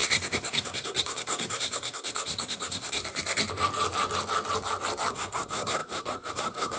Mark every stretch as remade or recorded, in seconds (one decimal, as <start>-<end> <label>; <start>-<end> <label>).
0.0-3.0 remade; 3.0-5.1 recorded; 5.1-6.8 remade